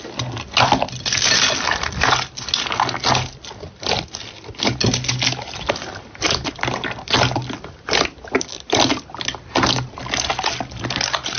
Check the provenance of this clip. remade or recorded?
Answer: recorded